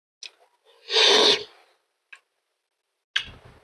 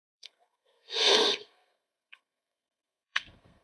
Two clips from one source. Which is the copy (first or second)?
second